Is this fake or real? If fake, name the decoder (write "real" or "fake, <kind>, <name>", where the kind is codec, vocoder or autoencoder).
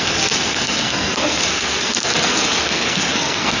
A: fake, codec, SNAC